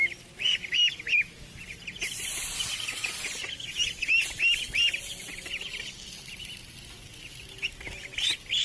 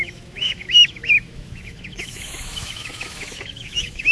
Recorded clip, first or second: first